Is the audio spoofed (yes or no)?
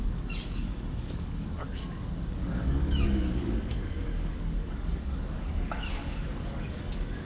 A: yes